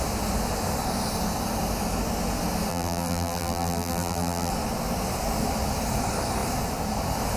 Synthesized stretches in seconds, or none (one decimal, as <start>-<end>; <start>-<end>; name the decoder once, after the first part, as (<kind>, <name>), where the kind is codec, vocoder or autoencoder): 2.7-4.5 (vocoder, BigVGAN v2)